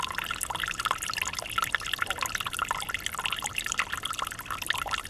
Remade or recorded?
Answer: recorded